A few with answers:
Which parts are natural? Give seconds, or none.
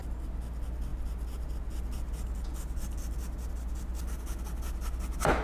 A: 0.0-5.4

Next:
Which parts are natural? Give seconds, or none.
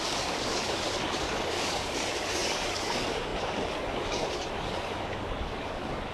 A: none